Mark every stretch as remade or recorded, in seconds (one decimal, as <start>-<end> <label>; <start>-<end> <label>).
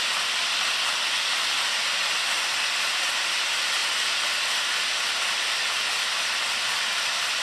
0.0-7.4 recorded